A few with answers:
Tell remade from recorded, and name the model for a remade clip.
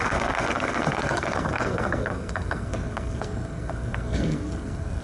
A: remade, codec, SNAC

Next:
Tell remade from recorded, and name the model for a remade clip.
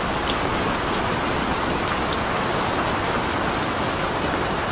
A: recorded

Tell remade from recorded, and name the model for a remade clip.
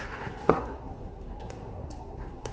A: remade, codec, SNAC